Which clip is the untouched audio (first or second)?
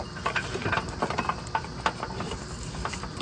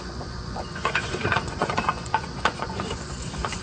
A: first